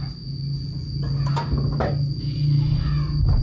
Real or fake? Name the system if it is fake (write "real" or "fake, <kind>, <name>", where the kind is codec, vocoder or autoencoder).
real